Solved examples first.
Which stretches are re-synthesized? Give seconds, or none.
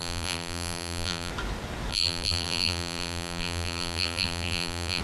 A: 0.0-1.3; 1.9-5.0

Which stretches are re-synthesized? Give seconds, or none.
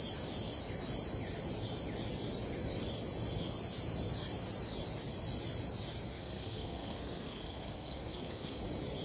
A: 6.1-8.6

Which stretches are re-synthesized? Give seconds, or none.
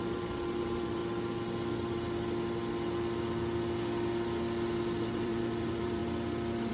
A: 0.0-1.0; 5.0-6.0